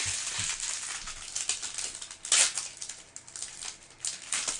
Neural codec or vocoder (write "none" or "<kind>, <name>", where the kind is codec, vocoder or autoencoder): none